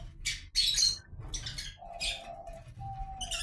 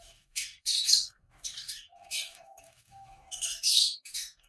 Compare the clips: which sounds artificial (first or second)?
second